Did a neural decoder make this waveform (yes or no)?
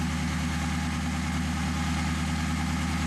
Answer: no